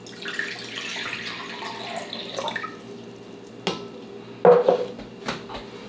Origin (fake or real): real